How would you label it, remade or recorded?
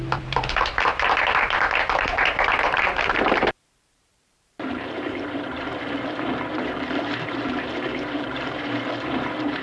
remade